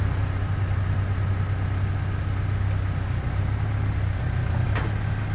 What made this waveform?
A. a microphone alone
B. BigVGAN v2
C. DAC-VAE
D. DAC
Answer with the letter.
A